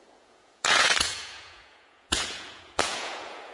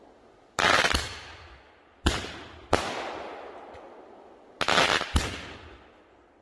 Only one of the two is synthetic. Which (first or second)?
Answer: first